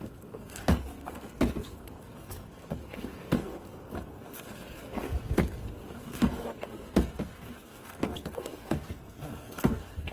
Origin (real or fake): fake